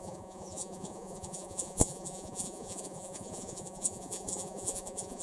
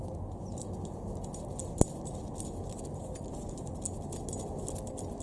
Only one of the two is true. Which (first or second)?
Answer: second